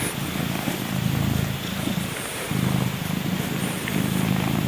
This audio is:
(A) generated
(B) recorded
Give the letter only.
B